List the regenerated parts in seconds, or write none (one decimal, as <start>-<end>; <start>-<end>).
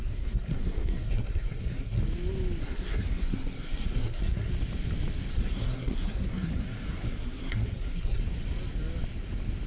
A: 0.0-2.0; 2.6-4.5; 5.3-8.2